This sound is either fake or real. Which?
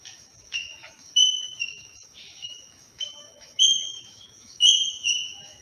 fake